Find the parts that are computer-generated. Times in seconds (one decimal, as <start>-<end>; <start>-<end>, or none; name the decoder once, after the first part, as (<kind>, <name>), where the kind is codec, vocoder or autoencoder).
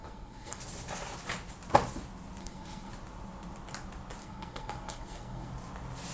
0.0-0.6 (codec, SNAC); 2.4-2.9; 4.2-5.5